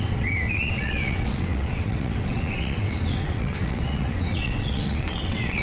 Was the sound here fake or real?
fake